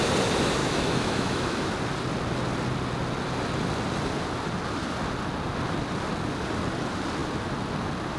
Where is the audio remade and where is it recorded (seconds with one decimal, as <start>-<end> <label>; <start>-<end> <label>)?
0.0-0.6 recorded; 0.6-1.7 remade; 1.7-8.2 recorded